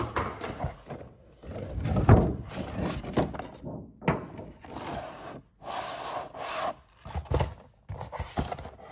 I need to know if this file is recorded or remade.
recorded